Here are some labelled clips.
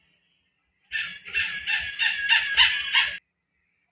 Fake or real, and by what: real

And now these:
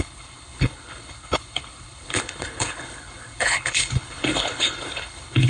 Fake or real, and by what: fake, codec, HILCodec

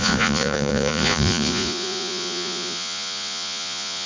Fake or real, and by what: fake, vocoder, Vocos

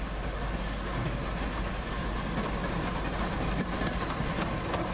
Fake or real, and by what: real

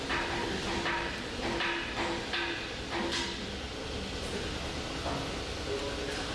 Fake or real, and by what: real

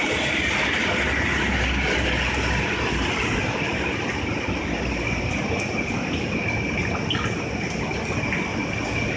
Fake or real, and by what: real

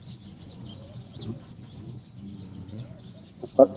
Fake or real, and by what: fake, vocoder, Vocos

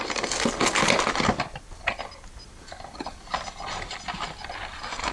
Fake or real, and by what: real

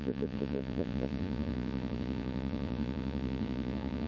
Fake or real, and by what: fake, vocoder, Vocos